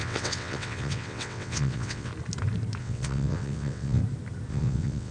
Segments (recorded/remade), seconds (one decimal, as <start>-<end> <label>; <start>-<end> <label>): 0.0-2.1 remade; 2.1-2.8 recorded; 2.8-4.0 remade; 4.0-4.5 recorded; 4.5-5.1 remade